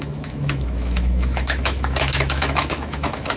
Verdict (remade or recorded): remade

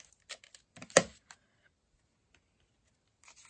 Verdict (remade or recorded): recorded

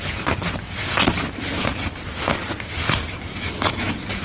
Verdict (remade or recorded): recorded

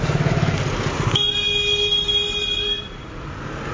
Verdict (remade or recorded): recorded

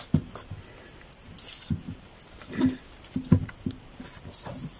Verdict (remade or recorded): recorded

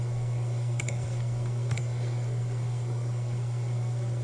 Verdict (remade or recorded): remade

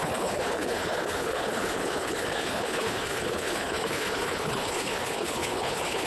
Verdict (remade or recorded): remade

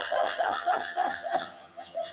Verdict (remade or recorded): remade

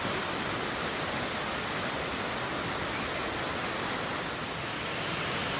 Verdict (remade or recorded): recorded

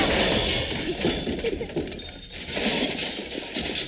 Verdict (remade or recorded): recorded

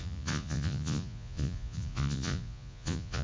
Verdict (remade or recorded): remade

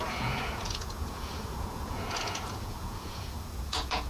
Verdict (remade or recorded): remade